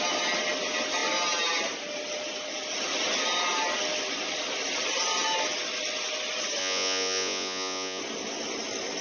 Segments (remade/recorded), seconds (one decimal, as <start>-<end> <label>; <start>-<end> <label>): 0.0-6.6 recorded; 6.6-8.0 remade; 8.0-9.0 recorded